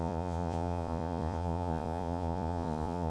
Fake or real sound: fake